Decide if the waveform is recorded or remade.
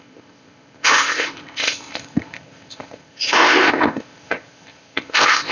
remade